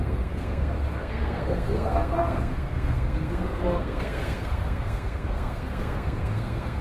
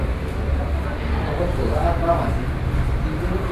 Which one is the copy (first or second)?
first